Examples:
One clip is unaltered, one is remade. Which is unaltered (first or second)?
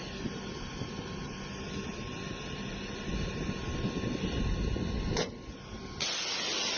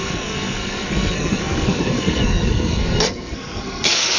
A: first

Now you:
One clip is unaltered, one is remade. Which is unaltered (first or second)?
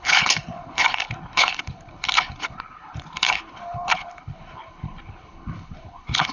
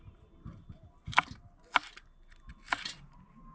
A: second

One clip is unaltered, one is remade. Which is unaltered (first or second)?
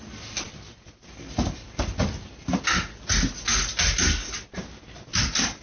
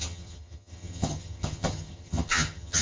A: first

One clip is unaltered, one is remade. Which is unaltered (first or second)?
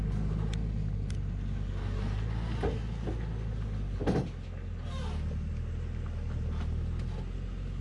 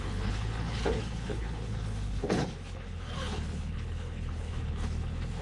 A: first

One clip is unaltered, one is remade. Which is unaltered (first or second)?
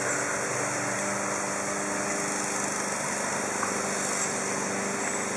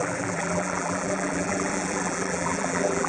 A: first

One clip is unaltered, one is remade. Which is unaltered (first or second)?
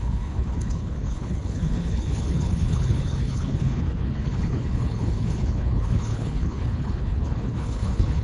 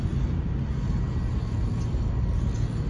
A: second